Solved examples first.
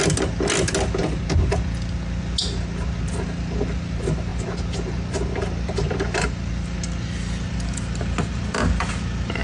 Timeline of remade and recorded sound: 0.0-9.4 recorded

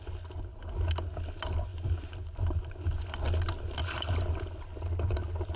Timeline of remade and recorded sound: 0.0-5.6 recorded

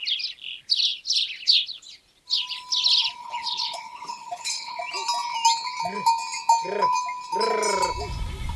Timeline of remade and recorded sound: 0.0-3.2 recorded; 3.2-4.8 remade; 4.8-8.6 recorded

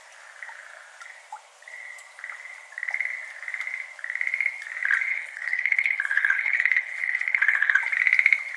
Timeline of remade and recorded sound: 0.0-5.1 recorded; 5.1-7.8 remade; 7.8-8.6 recorded